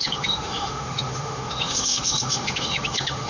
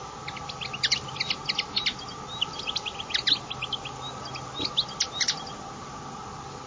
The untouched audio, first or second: second